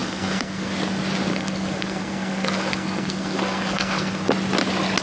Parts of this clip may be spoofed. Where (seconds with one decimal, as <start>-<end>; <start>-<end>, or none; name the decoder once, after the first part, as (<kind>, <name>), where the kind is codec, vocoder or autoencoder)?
0.0-0.7 (codec, SNAC); 1.3-4.3